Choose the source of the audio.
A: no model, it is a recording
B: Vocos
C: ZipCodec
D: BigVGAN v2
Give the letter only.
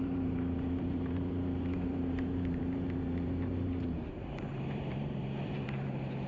D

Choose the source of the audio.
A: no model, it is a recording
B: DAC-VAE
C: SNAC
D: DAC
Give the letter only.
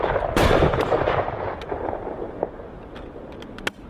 A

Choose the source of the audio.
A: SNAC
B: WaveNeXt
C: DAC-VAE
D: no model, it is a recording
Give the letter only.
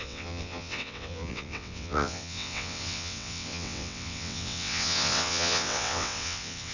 B